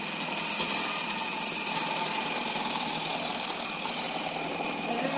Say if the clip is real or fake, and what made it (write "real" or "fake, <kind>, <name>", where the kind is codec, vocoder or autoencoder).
real